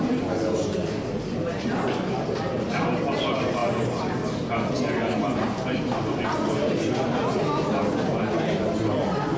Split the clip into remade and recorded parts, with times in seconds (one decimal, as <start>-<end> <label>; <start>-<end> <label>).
0.0-9.4 recorded

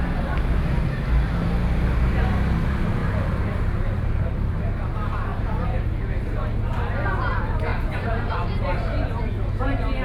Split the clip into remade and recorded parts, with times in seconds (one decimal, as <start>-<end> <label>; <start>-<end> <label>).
0.0-3.0 recorded; 3.0-4.6 remade; 4.6-5.3 recorded; 5.3-5.8 remade; 5.8-7.7 recorded; 7.7-9.2 remade; 9.2-10.0 recorded